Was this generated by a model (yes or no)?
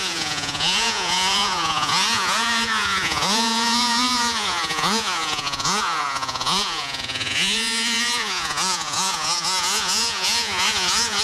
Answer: yes